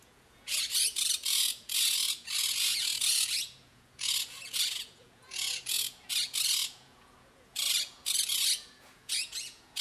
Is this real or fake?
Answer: fake